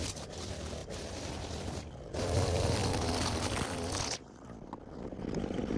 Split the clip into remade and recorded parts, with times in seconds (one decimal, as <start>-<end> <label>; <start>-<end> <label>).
0.0-0.8 remade; 0.8-2.2 recorded; 2.2-2.8 remade; 2.8-5.2 recorded; 5.2-5.8 remade